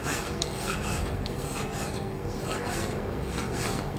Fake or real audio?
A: fake